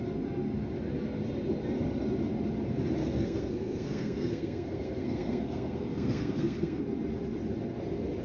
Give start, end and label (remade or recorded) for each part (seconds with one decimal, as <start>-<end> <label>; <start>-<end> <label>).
0.0-3.0 recorded; 3.0-6.8 remade; 6.8-8.2 recorded